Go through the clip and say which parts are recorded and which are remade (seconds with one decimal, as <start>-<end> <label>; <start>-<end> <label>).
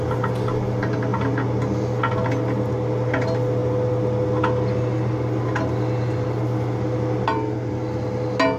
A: 0.0-8.6 recorded